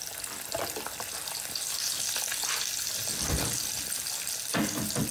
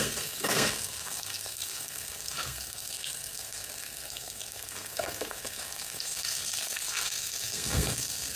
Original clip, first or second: first